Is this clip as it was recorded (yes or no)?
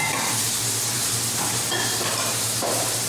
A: no